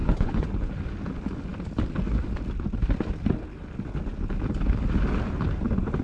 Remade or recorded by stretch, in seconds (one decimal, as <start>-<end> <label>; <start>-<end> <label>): 0.0-0.6 remade; 0.6-6.0 recorded